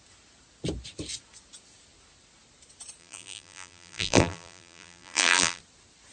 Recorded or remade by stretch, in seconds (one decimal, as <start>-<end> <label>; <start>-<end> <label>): 0.0-3.0 recorded; 3.0-5.6 remade; 5.6-6.1 recorded

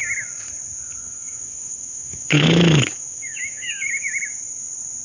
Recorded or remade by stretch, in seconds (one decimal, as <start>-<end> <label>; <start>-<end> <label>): 0.0-1.0 recorded; 1.0-4.0 remade; 4.0-5.0 recorded